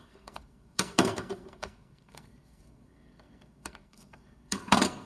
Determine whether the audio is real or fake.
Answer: fake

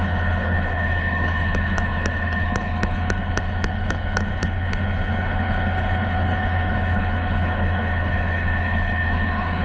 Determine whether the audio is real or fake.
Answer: fake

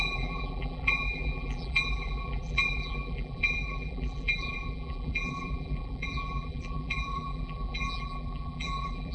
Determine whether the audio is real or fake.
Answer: fake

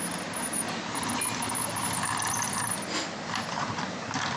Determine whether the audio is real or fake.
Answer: real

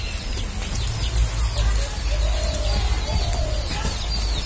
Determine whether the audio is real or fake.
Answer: real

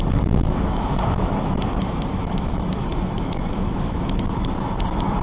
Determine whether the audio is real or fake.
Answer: fake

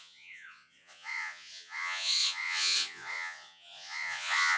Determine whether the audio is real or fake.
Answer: fake